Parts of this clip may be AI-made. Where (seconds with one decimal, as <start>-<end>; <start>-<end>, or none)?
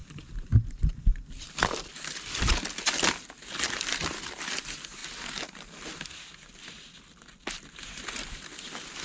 none